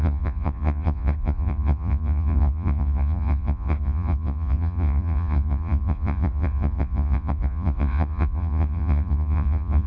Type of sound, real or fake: fake